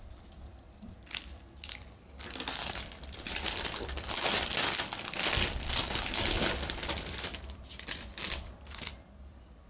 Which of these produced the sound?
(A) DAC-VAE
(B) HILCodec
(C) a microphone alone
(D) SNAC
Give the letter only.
C